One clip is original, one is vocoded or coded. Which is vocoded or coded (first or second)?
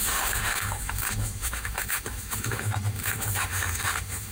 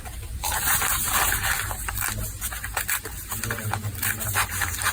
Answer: first